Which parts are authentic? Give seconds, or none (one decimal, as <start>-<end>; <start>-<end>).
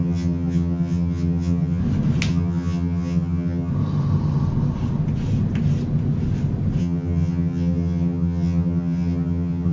1.8-2.3; 3.7-6.8